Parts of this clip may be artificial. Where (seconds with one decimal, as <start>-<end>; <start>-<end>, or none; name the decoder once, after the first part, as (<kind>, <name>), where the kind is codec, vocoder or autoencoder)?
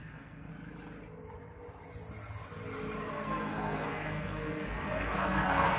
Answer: 0.0-0.5 (codec, SNAC); 3.1-5.8